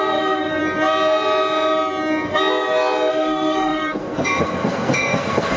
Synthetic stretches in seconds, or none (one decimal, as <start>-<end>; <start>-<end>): 0.0-0.6; 3.1-5.6